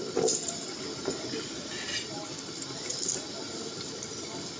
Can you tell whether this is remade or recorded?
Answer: recorded